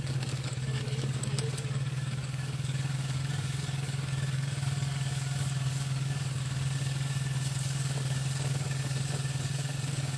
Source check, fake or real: fake